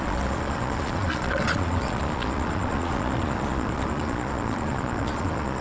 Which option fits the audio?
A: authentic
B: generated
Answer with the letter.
B